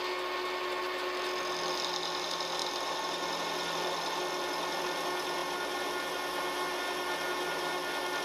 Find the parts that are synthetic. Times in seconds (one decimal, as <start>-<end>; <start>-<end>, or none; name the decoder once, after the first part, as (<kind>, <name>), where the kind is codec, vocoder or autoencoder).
none